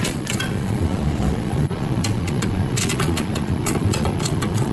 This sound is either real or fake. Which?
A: fake